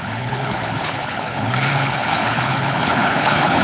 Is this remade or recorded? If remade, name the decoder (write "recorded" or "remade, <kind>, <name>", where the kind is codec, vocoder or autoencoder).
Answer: remade, codec, HILCodec